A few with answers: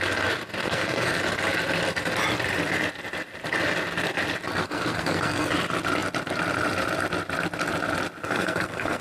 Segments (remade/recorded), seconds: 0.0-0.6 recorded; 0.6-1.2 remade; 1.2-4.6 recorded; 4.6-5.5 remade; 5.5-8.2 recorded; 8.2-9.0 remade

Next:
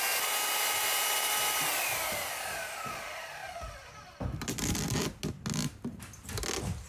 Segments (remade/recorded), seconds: 0.0-6.9 recorded

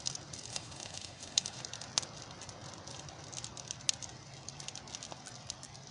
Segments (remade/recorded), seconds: 0.0-0.5 recorded; 0.5-1.6 remade; 1.6-5.9 recorded

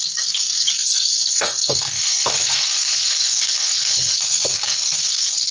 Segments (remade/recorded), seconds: 0.0-5.5 remade

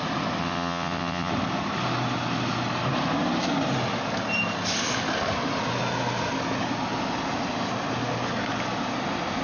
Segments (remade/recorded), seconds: 0.0-0.4 recorded; 0.4-1.3 remade; 1.3-9.4 recorded